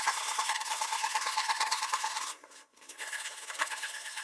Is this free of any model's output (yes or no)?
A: no